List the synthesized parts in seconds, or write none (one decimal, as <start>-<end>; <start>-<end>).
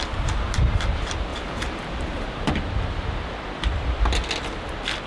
1.3-2.5